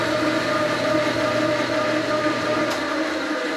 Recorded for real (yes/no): yes